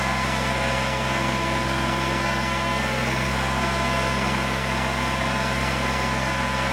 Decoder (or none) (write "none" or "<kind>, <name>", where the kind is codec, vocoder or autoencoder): codec, SNAC